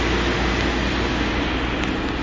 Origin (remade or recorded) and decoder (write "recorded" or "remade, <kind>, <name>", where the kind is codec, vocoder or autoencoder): recorded